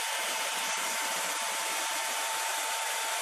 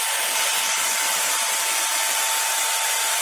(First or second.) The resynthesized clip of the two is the first